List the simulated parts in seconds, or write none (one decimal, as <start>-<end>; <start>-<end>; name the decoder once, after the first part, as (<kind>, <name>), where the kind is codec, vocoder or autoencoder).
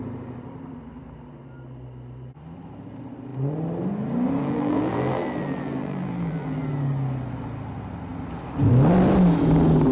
4.4-6.6 (vocoder, BigVGAN v2)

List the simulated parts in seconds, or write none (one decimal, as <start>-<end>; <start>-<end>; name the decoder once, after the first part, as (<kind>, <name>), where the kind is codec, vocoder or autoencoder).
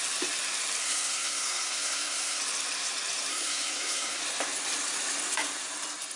0.8-2.4 (codec, SNAC); 3.3-4.2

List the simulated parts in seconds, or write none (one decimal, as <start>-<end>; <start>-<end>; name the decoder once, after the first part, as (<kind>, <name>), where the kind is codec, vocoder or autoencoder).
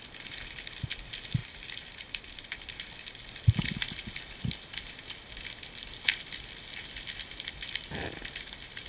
none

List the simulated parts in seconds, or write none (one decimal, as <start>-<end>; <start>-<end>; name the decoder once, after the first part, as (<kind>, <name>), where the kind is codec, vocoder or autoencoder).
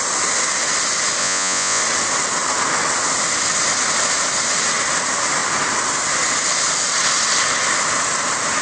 1.2-1.8 (vocoder, Vocos)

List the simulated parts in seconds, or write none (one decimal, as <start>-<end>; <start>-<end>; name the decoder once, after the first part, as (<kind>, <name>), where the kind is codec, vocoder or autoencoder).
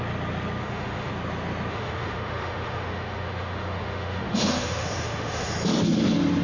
0.6-1.1 (autoencoder, DAC-VAE); 1.7-5.5